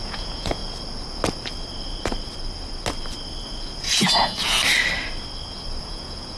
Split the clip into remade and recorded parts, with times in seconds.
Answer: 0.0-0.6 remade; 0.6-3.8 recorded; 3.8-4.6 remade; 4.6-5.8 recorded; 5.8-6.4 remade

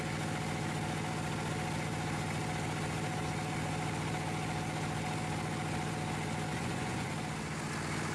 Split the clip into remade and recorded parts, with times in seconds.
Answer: 0.0-6.5 recorded; 6.5-7.1 remade; 7.1-8.1 recorded

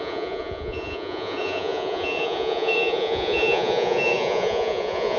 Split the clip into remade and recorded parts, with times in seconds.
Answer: 0.0-5.2 remade

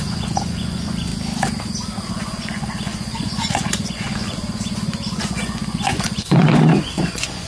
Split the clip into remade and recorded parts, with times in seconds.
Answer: 0.0-1.1 remade; 1.1-2.1 recorded; 2.1-7.5 remade

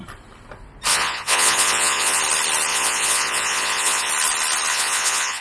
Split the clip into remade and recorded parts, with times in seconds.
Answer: 0.0-0.9 recorded; 0.9-2.2 remade; 2.2-2.7 recorded; 2.7-4.1 remade; 4.1-4.7 recorded; 4.7-5.4 remade